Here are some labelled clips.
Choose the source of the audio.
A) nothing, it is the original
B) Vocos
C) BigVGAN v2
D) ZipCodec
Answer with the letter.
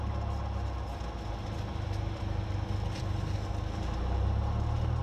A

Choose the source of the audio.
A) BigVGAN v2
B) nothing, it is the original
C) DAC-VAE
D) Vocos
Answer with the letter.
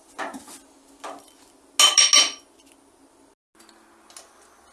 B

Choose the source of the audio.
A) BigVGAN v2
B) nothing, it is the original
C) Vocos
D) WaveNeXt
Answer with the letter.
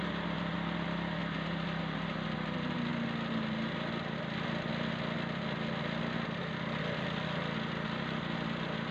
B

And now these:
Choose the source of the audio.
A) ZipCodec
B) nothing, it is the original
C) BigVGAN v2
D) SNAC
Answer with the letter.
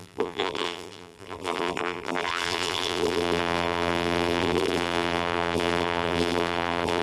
C